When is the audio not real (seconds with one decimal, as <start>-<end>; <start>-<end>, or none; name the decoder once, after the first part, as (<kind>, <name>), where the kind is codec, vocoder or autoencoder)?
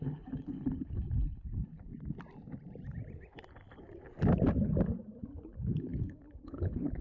0.0-1.9 (codec, HILCodec); 5.2-7.0